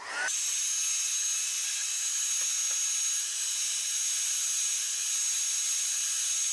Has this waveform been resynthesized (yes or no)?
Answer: no